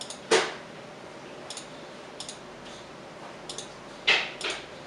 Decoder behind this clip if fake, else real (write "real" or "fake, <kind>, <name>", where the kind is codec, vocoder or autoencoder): real